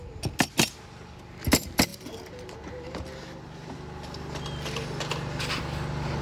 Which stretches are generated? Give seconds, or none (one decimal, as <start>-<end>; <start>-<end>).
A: none